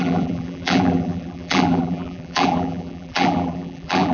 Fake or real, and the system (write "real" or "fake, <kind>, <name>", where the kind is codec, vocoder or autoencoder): fake, vocoder, BigVGAN v2